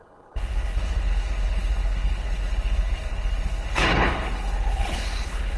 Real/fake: fake